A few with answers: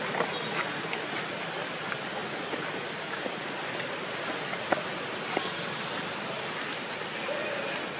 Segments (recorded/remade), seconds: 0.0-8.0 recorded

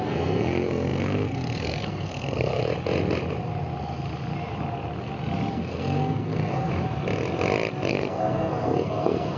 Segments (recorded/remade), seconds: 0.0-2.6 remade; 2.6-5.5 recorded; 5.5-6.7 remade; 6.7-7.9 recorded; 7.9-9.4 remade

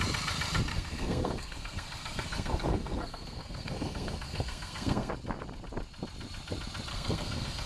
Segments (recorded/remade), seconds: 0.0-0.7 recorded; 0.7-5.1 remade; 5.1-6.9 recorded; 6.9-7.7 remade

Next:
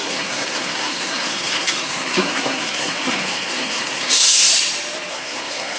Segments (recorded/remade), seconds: 0.0-4.5 remade; 4.5-5.1 recorded; 5.1-5.8 remade

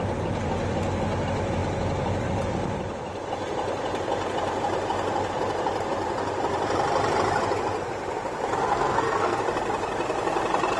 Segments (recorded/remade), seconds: 0.0-8.6 recorded; 8.6-9.4 remade; 9.4-10.8 recorded

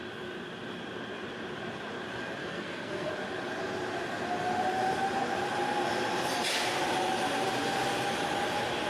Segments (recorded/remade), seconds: 0.0-2.4 recorded; 2.4-3.1 remade; 3.1-8.9 recorded

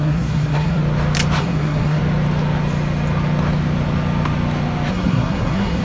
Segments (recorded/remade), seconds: 0.0-0.8 remade; 0.8-1.4 recorded; 1.4-2.0 remade; 2.0-4.9 recorded; 4.9-5.8 remade